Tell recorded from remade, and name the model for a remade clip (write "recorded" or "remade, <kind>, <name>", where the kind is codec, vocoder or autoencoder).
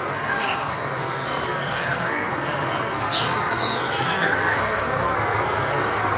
remade, codec, SNAC